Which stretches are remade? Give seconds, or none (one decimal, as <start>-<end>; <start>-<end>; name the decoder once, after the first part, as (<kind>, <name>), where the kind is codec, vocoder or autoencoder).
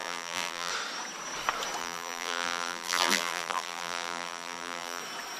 0.0-0.7 (vocoder, BigVGAN v2); 1.8-5.0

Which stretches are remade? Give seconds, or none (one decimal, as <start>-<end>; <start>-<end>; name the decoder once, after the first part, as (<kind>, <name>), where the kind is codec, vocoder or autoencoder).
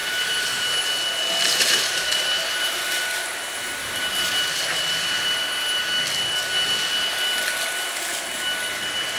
0.0-0.8 (vocoder, BigVGAN v2); 1.5-5.8